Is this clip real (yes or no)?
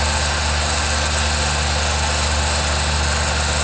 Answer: yes